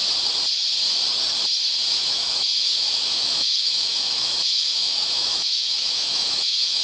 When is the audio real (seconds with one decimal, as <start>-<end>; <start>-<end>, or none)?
0.0-2.1